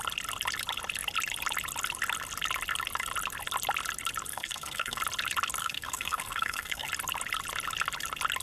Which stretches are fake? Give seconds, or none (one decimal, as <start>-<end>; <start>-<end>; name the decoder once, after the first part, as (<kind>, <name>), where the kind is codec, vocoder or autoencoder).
4.3-5.0 (codec, SNAC); 5.6-6.9